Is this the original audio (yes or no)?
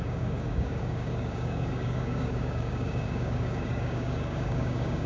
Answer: no